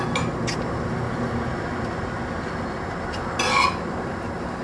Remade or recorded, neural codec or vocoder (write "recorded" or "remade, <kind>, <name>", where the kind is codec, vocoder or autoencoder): recorded